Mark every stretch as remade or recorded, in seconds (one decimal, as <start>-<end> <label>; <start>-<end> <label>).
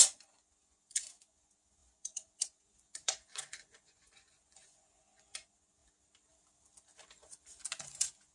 0.0-5.8 remade; 5.8-7.8 recorded; 7.8-8.3 remade